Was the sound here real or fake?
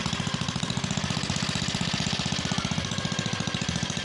real